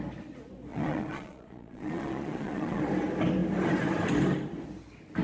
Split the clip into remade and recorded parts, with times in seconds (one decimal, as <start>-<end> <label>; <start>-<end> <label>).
0.0-0.7 recorded; 0.7-2.8 remade; 2.8-5.2 recorded

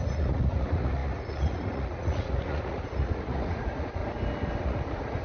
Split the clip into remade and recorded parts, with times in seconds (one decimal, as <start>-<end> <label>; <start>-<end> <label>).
0.0-4.0 remade; 4.0-4.6 recorded; 4.6-5.2 remade

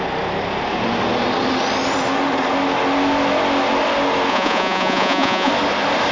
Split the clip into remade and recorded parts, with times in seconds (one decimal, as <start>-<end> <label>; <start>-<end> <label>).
0.0-4.3 recorded; 4.3-5.5 remade; 5.5-6.1 recorded

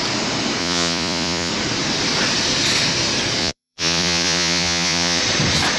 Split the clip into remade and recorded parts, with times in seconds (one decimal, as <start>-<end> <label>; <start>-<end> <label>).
0.0-0.6 recorded; 0.6-1.5 remade; 1.5-3.4 recorded; 3.4-5.2 remade; 5.2-5.8 recorded

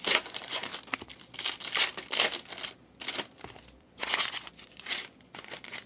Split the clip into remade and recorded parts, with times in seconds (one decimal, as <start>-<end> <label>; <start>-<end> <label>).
0.0-0.7 remade; 0.7-3.8 recorded; 3.8-5.9 remade

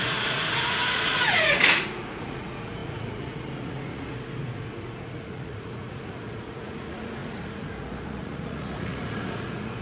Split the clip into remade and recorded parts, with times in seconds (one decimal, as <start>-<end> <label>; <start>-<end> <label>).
0.0-9.8 remade

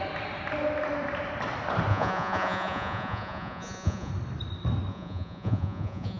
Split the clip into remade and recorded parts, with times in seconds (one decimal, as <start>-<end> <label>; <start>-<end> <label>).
0.0-1.9 recorded; 1.9-4.1 remade; 4.1-4.9 recorded; 4.9-6.2 remade

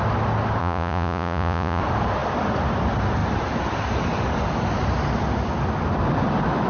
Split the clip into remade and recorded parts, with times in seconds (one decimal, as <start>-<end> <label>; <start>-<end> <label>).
0.0-0.6 recorded; 0.6-1.8 remade; 1.8-6.7 recorded